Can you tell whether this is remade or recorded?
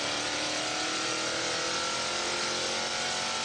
recorded